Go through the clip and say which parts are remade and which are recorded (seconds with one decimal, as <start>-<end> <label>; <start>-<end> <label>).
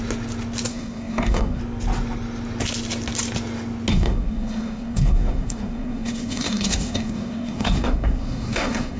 0.0-0.7 recorded; 0.7-1.6 remade; 1.6-3.9 recorded; 3.9-9.0 remade